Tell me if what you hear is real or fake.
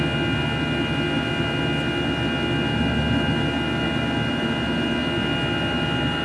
real